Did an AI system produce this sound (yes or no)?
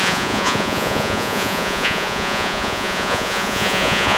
yes